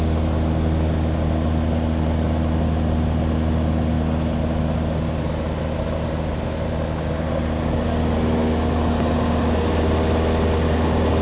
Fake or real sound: real